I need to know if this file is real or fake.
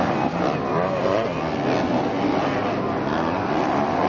real